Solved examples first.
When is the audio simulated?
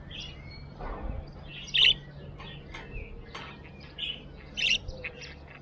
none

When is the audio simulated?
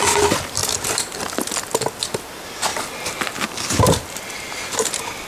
none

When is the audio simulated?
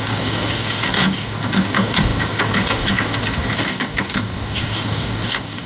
0.0-5.7 (codec, DAC)